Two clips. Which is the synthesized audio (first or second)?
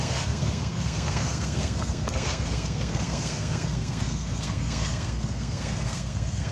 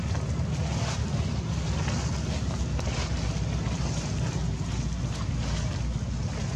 first